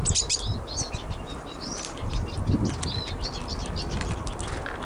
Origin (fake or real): real